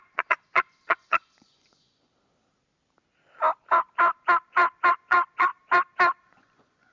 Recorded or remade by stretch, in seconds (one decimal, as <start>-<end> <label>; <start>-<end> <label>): 0.0-2.1 remade; 2.1-4.9 recorded; 4.9-5.5 remade; 5.5-6.3 recorded; 6.3-6.9 remade